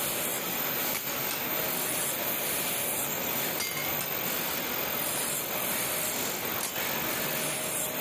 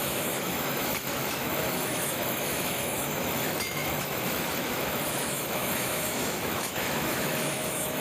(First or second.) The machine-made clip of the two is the second